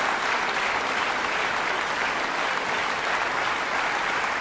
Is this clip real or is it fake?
real